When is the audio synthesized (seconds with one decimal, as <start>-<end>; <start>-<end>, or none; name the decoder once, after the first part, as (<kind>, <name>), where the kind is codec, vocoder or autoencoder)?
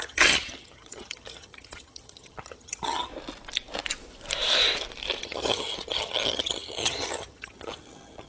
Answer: 0.0-3.1 (vocoder, HiFi-GAN); 5.2-8.3